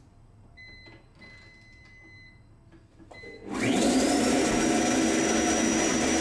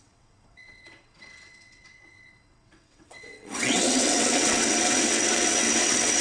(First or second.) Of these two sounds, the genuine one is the first